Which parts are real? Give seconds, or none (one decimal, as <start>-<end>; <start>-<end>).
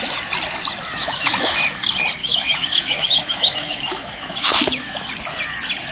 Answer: 0.0-1.0; 1.6-2.2; 5.1-5.9